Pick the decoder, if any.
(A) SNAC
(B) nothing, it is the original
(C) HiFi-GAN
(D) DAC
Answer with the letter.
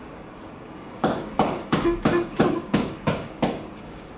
D